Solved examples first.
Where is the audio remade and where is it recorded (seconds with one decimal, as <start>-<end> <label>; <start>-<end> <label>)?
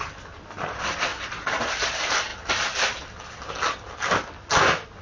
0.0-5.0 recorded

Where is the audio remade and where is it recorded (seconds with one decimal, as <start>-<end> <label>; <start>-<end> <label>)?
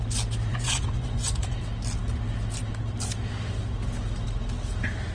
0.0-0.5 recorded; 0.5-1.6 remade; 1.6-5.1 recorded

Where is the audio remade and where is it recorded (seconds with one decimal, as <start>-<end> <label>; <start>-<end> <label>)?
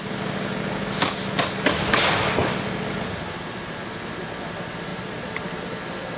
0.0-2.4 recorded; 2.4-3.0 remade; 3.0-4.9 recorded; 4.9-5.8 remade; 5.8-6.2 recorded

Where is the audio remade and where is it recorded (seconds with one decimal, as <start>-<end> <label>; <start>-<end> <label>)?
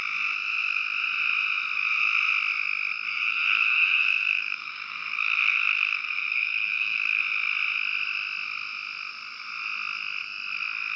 0.0-3.1 recorded; 3.1-7.2 remade; 7.2-11.0 recorded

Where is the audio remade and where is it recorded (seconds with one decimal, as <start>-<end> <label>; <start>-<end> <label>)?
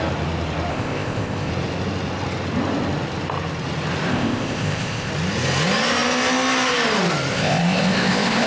0.0-0.7 recorded; 0.7-1.5 remade; 1.5-4.1 recorded; 4.1-5.1 remade; 5.1-7.3 recorded; 7.3-8.5 remade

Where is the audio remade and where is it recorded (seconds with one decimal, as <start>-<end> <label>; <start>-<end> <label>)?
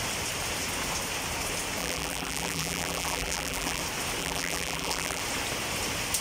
0.0-1.8 recorded; 1.8-3.8 remade; 3.8-4.2 recorded; 4.2-5.2 remade; 5.2-6.2 recorded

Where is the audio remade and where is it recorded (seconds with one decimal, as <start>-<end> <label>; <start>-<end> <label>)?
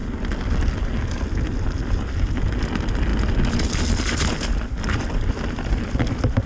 0.0-6.5 recorded